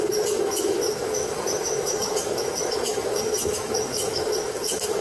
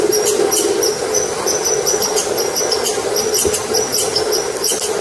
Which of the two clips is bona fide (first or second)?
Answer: second